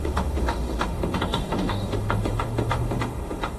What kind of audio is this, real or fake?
fake